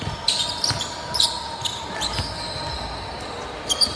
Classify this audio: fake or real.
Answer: real